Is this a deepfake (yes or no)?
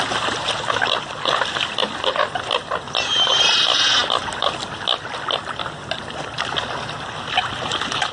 no